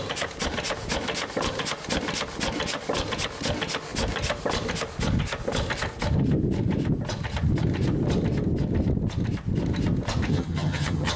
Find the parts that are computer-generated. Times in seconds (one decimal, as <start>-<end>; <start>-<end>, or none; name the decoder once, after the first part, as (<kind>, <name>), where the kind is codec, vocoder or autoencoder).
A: 10.3-11.2 (vocoder, HiFi-GAN)